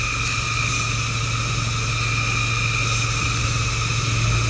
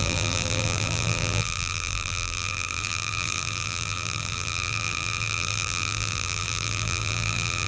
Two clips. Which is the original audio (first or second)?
first